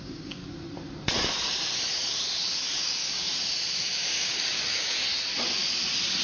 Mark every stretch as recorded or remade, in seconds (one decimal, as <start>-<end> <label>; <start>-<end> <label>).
0.0-0.4 remade; 0.4-2.8 recorded; 2.8-3.3 remade; 3.3-3.8 recorded; 3.8-5.0 remade; 5.0-6.2 recorded